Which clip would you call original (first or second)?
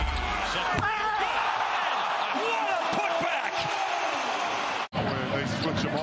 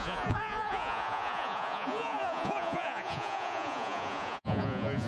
first